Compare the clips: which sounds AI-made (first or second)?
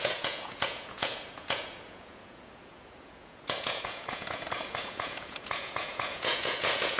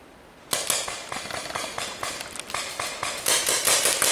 first